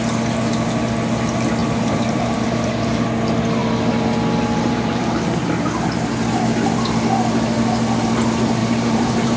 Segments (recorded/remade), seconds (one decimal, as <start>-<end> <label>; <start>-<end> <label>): 0.0-1.6 recorded; 1.6-2.8 remade; 2.8-8.6 recorded; 8.6-9.4 remade